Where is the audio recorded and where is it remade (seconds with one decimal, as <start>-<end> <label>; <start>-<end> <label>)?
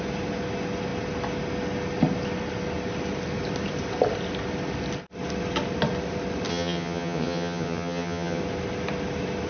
0.0-6.5 recorded; 6.5-8.4 remade; 8.4-9.5 recorded